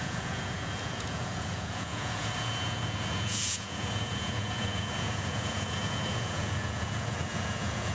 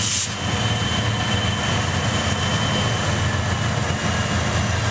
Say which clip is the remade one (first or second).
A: first